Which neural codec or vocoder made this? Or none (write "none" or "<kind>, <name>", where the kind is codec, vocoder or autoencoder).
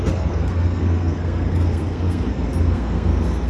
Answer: codec, SNAC